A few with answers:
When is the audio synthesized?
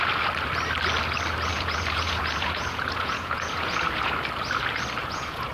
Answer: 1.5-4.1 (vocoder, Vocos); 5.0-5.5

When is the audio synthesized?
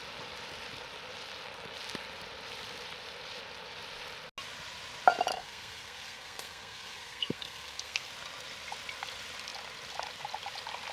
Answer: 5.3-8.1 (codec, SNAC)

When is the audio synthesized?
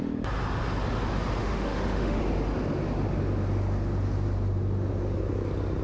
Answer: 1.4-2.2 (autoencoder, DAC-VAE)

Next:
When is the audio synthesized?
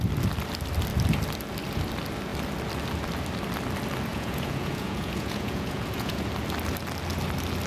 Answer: 4.1-6.2 (vocoder, Vocos)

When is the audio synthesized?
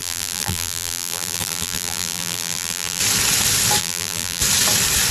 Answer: 0.0-3.0 (vocoder, BigVGAN v2); 3.8-4.4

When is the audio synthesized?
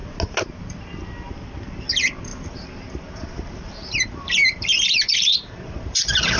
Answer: 2.3-6.4 (vocoder, BigVGAN v2)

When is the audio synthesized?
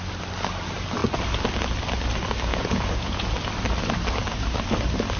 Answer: 2.5-3.3 (vocoder, Vocos)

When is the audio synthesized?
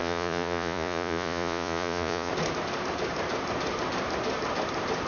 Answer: 0.0-2.3 (vocoder, Vocos)